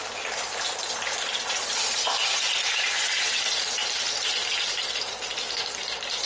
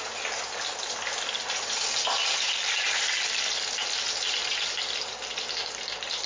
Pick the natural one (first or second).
second